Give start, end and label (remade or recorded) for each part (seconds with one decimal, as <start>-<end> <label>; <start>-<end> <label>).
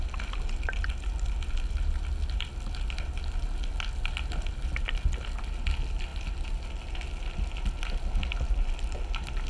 0.0-9.5 recorded